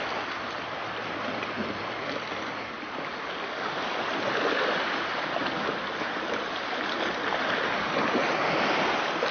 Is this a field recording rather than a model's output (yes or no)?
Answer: yes